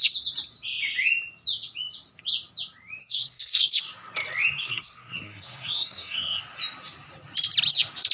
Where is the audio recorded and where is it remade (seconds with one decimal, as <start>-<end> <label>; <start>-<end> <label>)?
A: 0.0-3.0 recorded; 3.0-3.8 remade; 3.8-4.6 recorded; 4.6-6.4 remade; 6.4-8.1 recorded